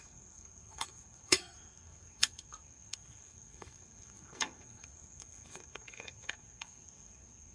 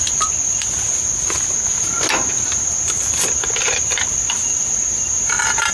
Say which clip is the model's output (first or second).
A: first